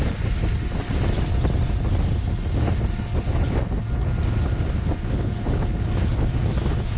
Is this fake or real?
real